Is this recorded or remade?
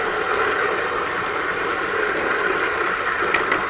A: recorded